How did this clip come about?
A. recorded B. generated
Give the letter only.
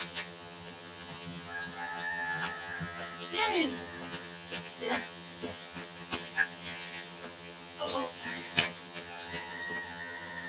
B